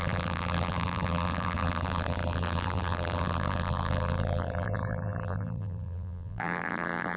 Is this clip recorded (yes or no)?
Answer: no